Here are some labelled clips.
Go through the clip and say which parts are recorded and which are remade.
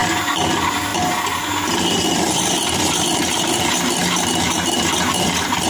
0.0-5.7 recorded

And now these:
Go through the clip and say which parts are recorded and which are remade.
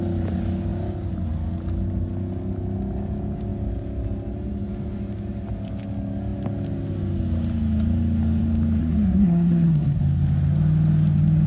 0.0-8.8 recorded; 8.8-10.0 remade; 10.0-11.5 recorded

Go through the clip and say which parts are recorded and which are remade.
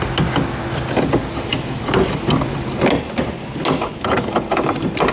0.0-5.1 recorded